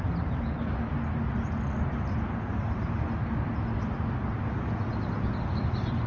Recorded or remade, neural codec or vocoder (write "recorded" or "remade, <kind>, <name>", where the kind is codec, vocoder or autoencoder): recorded